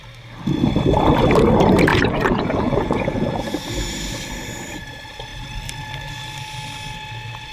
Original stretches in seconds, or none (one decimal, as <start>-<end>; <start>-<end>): 0.0-1.9; 3.5-7.5

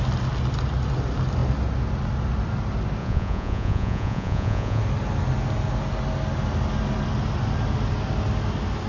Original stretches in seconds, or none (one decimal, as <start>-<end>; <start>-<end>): 0.0-3.0; 4.8-8.9

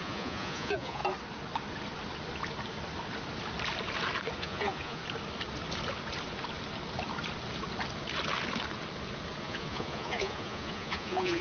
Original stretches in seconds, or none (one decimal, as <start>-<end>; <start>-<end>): 1.0-4.4; 5.0-9.4

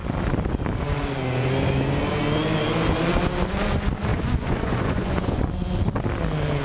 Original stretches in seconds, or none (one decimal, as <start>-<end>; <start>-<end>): 0.0-4.1; 5.5-6.6